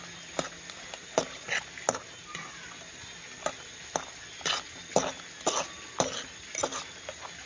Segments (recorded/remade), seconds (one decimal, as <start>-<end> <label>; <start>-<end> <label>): 0.0-7.5 recorded